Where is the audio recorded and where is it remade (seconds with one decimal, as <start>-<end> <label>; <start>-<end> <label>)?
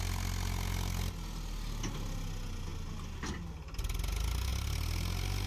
0.0-5.5 recorded